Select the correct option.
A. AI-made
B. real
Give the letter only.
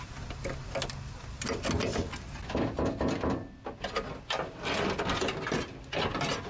B